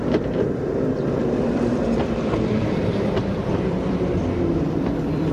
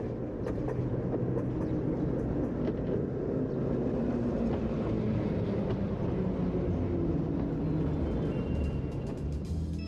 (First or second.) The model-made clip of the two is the first